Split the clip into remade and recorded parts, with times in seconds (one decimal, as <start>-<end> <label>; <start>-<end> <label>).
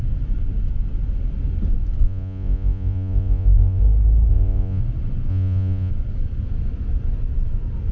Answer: 0.0-2.0 recorded; 2.0-3.8 remade; 3.8-4.3 recorded; 4.3-4.8 remade; 4.8-5.3 recorded; 5.3-5.9 remade; 5.9-7.9 recorded